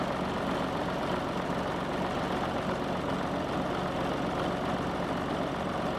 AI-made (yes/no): no